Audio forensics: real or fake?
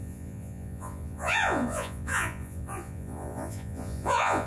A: fake